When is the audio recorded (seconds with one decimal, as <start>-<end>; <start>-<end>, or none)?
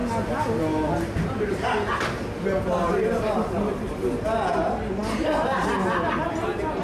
0.0-6.8